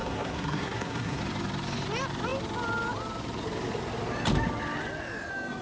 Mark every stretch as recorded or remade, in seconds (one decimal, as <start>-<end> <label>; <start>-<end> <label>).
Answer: 0.0-1.2 remade; 1.2-5.6 recorded